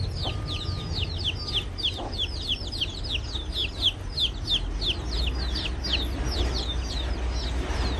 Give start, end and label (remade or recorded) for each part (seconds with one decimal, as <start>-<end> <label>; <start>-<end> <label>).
0.0-1.7 recorded; 1.7-3.0 remade; 3.0-8.0 recorded